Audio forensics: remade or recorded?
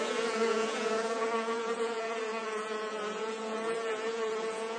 remade